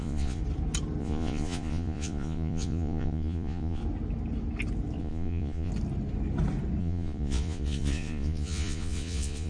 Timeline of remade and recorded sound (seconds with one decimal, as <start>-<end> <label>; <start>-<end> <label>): 0.0-0.4 remade; 0.4-1.0 recorded; 1.0-3.8 remade; 3.8-5.0 recorded; 5.0-5.7 remade; 5.7-6.8 recorded; 6.8-9.5 remade